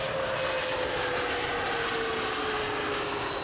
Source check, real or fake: real